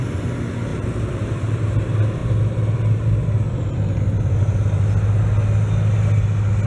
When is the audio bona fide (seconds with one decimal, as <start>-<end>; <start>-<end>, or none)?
0.0-0.7; 1.7-6.7